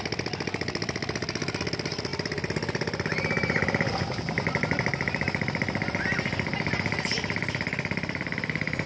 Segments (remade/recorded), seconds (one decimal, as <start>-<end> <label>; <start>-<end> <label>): 0.0-8.9 recorded